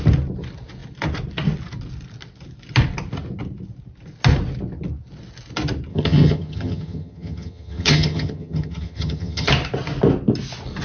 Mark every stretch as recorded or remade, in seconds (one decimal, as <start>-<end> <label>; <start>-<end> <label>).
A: 0.0-5.9 recorded; 5.9-9.5 remade; 9.5-10.8 recorded